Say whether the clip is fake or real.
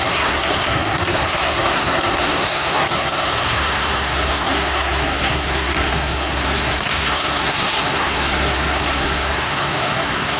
fake